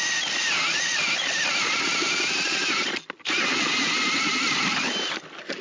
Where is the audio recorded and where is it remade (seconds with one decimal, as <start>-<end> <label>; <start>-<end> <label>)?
0.0-5.6 recorded